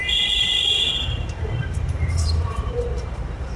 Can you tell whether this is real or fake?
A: fake